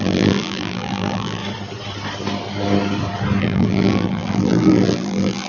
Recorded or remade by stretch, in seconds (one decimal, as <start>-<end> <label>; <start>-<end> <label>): 0.0-1.4 remade; 1.4-3.4 recorded; 3.4-5.5 remade